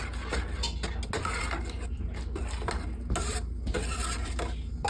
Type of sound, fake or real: real